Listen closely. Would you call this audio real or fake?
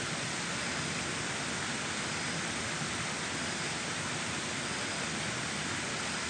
real